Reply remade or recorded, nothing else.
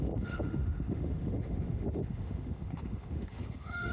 remade